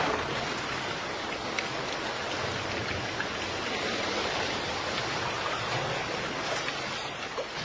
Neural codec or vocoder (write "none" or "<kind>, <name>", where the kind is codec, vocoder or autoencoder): none